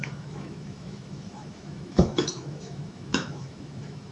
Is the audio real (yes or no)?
no